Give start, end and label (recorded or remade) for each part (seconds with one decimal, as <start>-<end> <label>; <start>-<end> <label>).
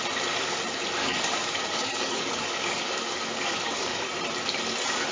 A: 0.0-1.0 recorded; 1.0-4.1 remade; 4.1-5.1 recorded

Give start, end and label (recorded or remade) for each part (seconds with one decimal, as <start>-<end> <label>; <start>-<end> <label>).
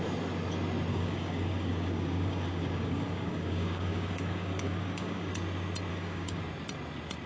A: 0.0-0.9 recorded; 0.9-5.3 remade; 5.3-5.9 recorded; 5.9-6.4 remade; 6.4-7.3 recorded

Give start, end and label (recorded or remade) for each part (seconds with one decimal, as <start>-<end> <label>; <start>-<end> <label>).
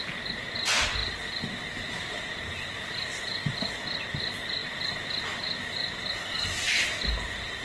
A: 0.0-7.6 recorded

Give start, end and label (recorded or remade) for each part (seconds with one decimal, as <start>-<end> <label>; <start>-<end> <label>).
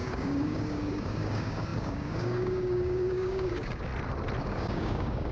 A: 0.0-3.9 remade; 3.9-4.4 recorded; 4.4-5.3 remade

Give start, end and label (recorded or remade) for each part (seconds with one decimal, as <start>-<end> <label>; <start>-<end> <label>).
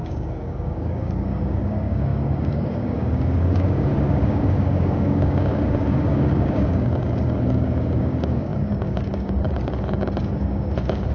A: 0.0-11.1 remade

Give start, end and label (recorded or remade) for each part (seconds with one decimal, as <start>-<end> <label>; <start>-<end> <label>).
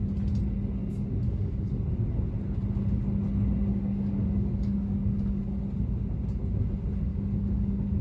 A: 0.0-0.8 recorded; 0.8-1.7 remade; 1.7-3.7 recorded; 3.7-5.4 remade; 5.4-7.1 recorded; 7.1-8.0 remade